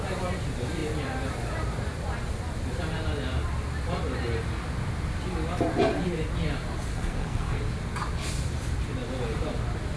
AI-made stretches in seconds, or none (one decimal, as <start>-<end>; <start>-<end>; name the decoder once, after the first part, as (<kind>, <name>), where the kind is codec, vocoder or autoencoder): 6.9-7.6 (codec, SNAC)